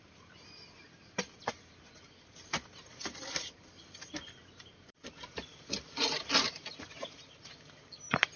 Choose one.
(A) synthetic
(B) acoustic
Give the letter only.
A